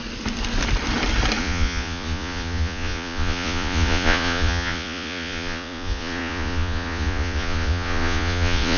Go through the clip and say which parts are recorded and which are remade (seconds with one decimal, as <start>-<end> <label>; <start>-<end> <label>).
0.0-1.4 recorded; 1.4-8.8 remade